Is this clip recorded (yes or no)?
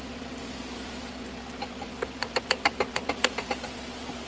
yes